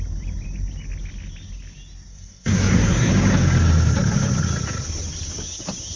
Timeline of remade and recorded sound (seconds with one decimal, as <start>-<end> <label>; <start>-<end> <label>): 0.0-2.1 recorded; 2.1-3.1 remade; 3.1-6.0 recorded